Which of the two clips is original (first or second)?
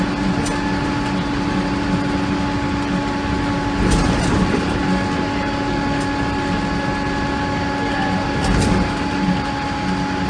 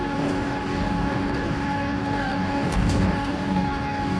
first